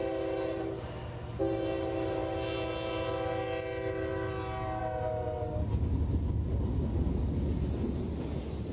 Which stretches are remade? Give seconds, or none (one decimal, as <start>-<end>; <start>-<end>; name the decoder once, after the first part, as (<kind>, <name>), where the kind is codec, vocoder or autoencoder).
none